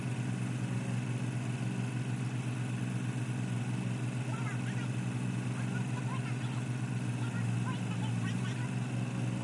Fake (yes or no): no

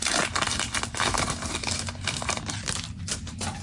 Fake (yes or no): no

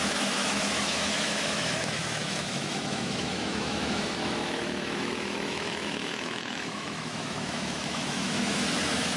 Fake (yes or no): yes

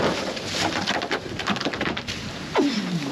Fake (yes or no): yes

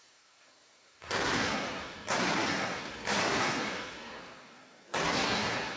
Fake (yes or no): yes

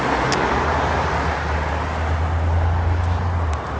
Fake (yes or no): no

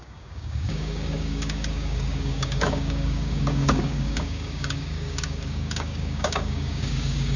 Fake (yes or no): yes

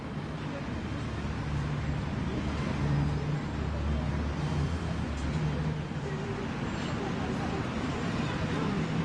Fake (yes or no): no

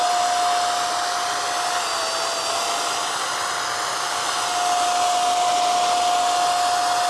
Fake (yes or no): no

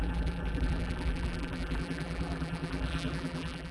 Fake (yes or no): yes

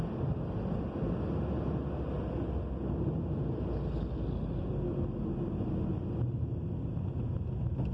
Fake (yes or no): no